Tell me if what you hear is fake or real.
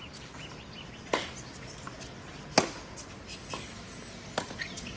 real